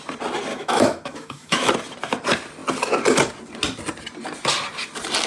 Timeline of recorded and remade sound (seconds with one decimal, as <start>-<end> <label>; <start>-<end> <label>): 0.0-0.5 recorded; 0.5-1.7 remade; 1.7-5.3 recorded